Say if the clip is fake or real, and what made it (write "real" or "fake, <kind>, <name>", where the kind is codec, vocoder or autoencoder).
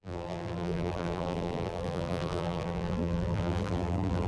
fake, vocoder, BigVGAN v2